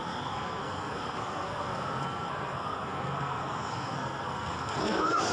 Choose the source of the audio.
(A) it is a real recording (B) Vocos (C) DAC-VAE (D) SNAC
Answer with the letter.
D